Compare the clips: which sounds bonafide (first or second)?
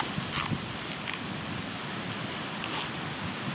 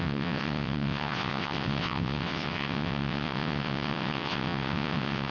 first